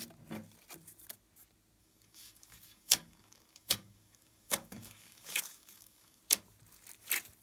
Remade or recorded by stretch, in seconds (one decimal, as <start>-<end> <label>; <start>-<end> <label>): 0.0-1.8 recorded; 1.8-6.2 remade; 6.2-7.4 recorded